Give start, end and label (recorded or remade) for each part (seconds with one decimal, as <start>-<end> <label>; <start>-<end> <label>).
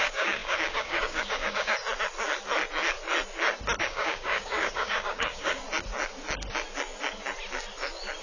0.0-1.7 remade; 1.7-3.8 recorded; 3.8-5.6 remade; 5.6-8.2 recorded